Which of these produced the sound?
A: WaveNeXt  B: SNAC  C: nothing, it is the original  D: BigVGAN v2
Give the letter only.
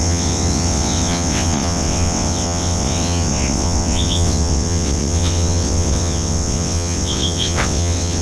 A